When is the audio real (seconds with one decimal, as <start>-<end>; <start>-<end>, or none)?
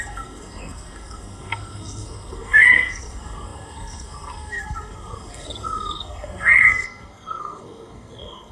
none